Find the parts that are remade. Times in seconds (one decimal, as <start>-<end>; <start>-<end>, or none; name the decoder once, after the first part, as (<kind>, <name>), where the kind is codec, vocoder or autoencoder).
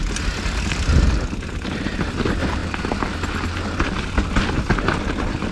none